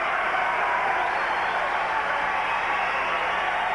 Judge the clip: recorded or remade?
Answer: recorded